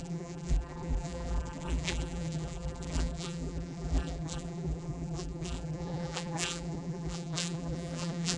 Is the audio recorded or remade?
remade